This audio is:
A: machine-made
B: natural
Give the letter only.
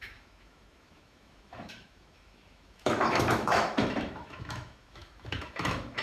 A